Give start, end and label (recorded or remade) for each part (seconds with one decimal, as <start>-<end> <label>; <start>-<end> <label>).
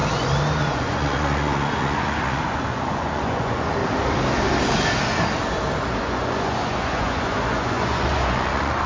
0.0-0.6 recorded; 0.6-3.8 remade; 3.8-6.0 recorded; 6.0-8.9 remade